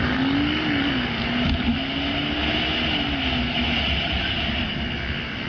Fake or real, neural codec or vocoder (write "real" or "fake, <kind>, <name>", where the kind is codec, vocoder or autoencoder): real